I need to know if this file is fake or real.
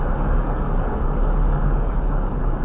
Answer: fake